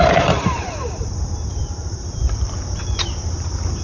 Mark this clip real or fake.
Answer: fake